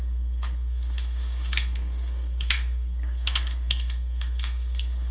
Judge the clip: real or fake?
fake